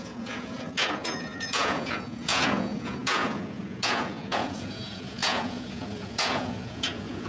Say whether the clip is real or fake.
fake